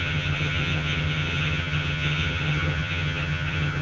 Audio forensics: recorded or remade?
remade